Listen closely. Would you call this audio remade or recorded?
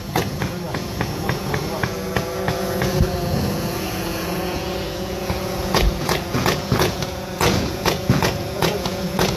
remade